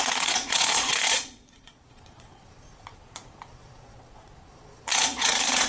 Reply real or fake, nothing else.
fake